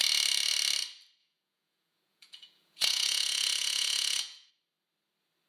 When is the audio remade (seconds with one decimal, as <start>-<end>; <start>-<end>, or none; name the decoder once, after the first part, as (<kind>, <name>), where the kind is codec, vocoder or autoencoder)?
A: 1.2-4.5 (vocoder, Vocos)